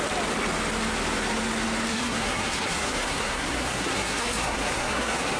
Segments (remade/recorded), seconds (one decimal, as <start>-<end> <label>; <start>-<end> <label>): 0.0-1.9 recorded; 1.9-5.4 remade